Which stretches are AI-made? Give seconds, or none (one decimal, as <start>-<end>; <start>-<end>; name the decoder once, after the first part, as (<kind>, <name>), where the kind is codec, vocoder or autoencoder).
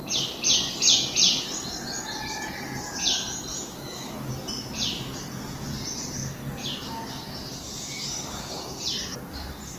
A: 3.5-4.3 (autoencoder, DAC-VAE)